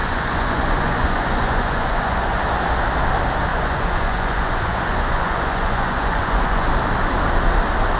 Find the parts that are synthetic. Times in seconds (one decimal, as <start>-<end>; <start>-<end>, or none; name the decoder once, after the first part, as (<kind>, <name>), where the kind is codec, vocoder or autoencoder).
0.0-2.4 (vocoder, Vocos); 3.5-6.7